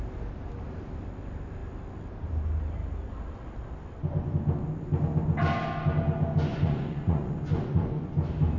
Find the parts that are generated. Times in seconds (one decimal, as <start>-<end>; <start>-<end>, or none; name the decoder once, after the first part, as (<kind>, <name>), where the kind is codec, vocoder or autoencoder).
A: 6.5-8.1 (vocoder, Vocos)